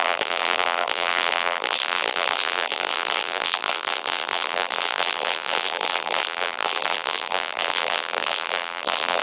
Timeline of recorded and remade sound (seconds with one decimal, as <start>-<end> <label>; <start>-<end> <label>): 0.0-9.2 remade